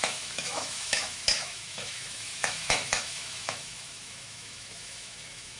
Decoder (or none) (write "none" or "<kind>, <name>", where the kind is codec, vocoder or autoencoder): autoencoder, DAC-VAE